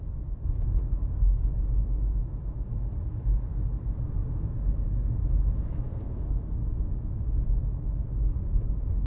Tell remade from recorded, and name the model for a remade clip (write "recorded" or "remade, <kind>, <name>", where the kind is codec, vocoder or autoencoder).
remade, autoencoder, DAC-VAE